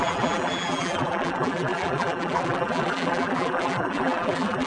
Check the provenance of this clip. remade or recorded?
remade